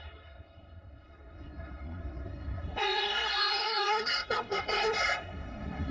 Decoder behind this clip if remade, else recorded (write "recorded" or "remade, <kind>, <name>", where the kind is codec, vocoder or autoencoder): remade, codec, SNAC